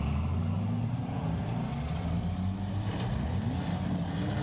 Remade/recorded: recorded